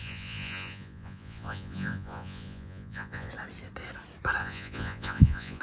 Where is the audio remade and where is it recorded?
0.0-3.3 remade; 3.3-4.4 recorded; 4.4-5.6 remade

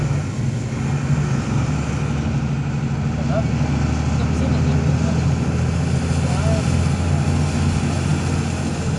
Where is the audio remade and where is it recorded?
0.0-9.0 recorded

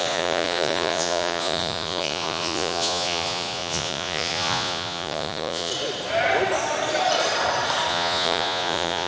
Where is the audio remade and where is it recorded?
0.0-5.7 remade; 5.7-7.9 recorded; 7.9-9.1 remade

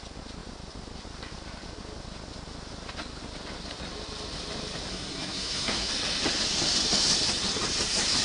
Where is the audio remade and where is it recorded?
0.0-4.9 recorded; 4.9-5.9 remade; 5.9-8.2 recorded

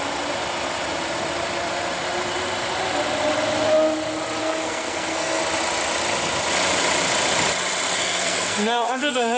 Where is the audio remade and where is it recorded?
0.0-4.4 recorded; 4.4-5.4 remade; 5.4-7.9 recorded; 7.9-9.4 remade

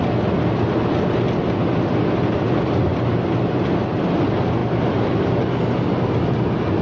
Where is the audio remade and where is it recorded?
0.0-6.8 recorded

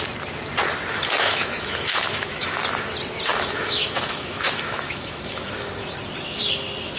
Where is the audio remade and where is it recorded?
0.0-0.9 recorded; 0.9-2.6 remade; 2.6-3.3 recorded; 3.3-5.5 remade; 5.5-7.0 recorded

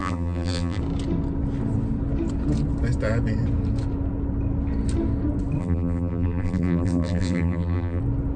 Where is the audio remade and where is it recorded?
0.0-0.8 remade; 0.8-5.6 recorded; 5.6-8.0 remade; 8.0-8.4 recorded